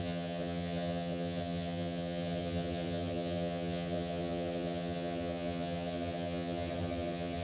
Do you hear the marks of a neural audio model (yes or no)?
yes